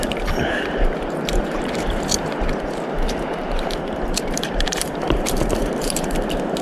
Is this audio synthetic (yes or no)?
yes